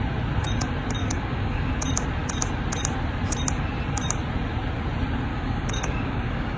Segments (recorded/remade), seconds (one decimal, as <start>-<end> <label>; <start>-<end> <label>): 0.0-1.0 recorded; 1.0-1.7 remade; 1.7-5.3 recorded; 5.3-6.6 remade